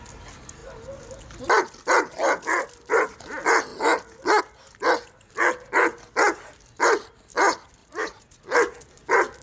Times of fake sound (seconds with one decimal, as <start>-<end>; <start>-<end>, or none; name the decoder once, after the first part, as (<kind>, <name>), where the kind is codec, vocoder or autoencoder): 7.8-8.4 (vocoder, Vocos)